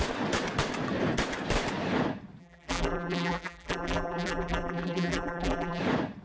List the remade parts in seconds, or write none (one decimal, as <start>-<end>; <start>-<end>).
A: 2.4-5.8